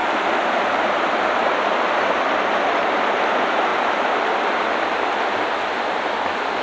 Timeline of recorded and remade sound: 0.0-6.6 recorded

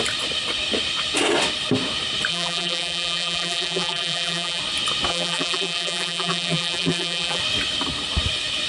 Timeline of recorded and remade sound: 0.0-2.3 recorded; 2.3-4.6 remade; 4.6-5.1 recorded; 5.1-7.4 remade; 7.4-8.7 recorded

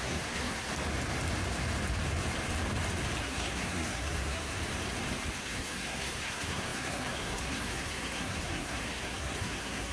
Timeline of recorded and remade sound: 0.0-0.7 remade; 0.7-3.2 recorded; 3.2-4.6 remade; 4.6-5.4 recorded; 5.4-9.9 remade

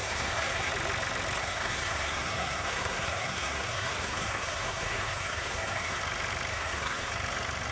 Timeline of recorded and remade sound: 0.0-0.7 remade; 0.7-1.4 recorded; 1.4-6.0 remade; 6.0-6.5 recorded; 6.5-7.1 remade; 7.1-7.7 recorded

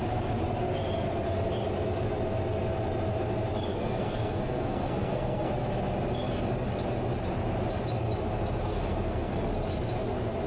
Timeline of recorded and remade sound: 0.0-3.7 recorded; 3.7-5.5 remade; 5.5-8.7 recorded; 8.7-9.5 remade; 9.5-10.5 recorded

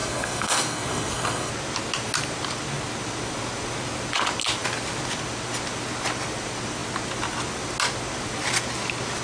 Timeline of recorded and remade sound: 0.0-1.5 remade; 1.5-9.2 recorded

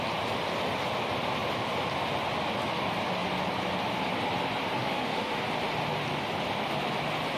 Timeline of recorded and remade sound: 0.0-4.7 recorded; 4.7-5.4 remade; 5.4-7.4 recorded